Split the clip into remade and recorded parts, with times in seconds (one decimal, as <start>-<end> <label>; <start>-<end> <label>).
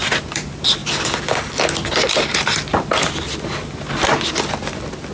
0.0-5.1 recorded